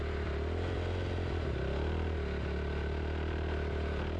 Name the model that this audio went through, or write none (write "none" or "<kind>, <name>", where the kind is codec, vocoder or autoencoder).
none